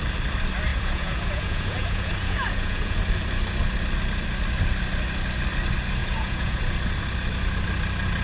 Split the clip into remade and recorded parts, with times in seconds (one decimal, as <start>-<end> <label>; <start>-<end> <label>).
0.0-0.7 recorded; 0.7-3.0 remade; 3.0-6.0 recorded; 6.0-6.6 remade; 6.6-8.2 recorded